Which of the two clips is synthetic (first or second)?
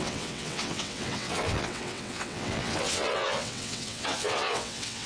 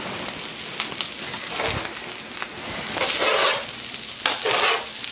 first